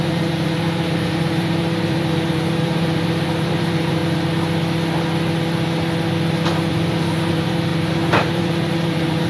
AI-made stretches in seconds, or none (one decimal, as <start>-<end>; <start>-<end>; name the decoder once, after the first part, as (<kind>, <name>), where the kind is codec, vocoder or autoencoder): 0.0-4.0 (vocoder, BigVGAN v2); 6.7-9.3

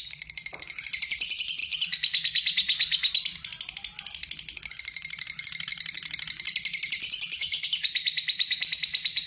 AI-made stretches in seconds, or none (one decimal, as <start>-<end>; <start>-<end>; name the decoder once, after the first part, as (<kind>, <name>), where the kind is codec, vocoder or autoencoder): 0.0-1.6 (vocoder, BigVGAN v2); 4.7-5.7; 6.7-9.3